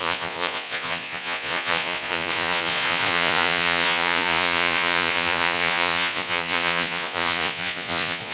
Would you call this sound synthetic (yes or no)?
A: yes